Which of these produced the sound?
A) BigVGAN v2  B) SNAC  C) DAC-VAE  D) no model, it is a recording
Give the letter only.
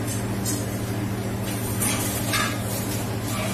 D